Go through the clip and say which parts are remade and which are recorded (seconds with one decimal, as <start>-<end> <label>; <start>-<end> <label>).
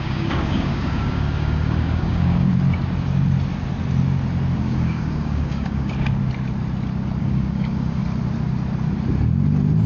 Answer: 0.0-2.5 remade; 2.5-4.6 recorded; 4.6-6.2 remade; 6.2-7.2 recorded; 7.2-8.0 remade; 8.0-9.9 recorded